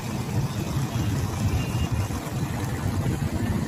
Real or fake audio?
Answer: real